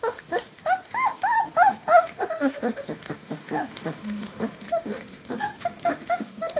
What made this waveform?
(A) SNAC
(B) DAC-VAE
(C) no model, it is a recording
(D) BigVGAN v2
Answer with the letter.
B